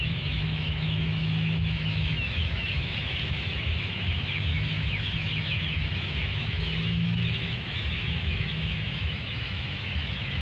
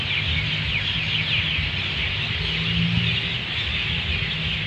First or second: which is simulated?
first